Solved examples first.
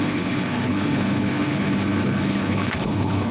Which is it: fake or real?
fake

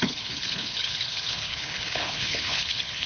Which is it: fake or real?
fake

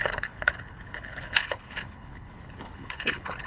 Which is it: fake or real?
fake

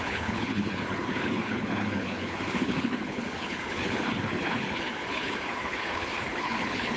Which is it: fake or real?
fake